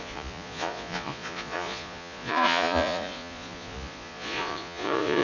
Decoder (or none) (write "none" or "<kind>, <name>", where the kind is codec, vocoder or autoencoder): vocoder, Vocos